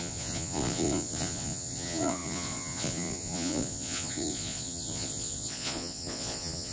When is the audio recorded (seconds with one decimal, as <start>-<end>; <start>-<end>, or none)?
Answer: none